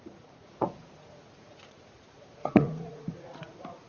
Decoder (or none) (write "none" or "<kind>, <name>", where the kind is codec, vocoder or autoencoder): vocoder, Vocos